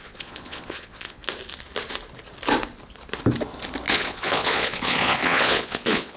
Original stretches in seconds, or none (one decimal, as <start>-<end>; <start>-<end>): 1.2-3.9